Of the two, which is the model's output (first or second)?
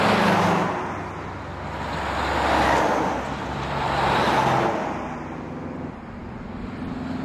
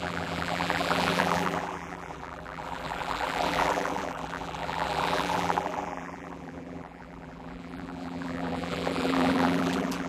second